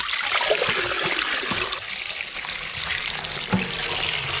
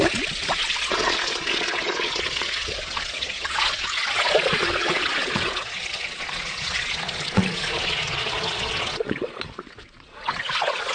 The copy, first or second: second